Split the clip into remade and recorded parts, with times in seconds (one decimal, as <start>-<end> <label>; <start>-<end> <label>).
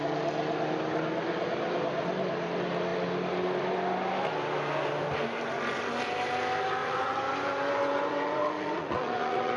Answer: 0.0-6.8 recorded; 6.8-9.6 remade